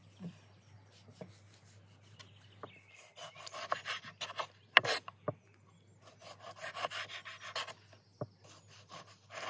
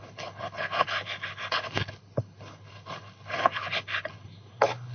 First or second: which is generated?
second